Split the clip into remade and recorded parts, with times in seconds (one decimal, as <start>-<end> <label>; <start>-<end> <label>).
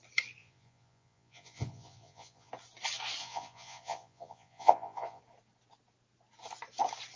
0.0-0.4 recorded; 0.4-2.5 remade; 2.5-3.2 recorded; 3.2-5.2 remade; 5.2-7.2 recorded